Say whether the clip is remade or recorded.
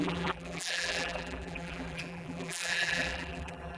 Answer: remade